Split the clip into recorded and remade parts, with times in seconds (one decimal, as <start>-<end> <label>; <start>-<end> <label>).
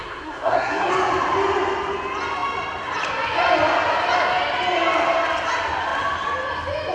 0.0-0.9 remade; 0.9-6.9 recorded